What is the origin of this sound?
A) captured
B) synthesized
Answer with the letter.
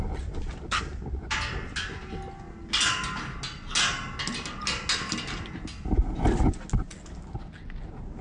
A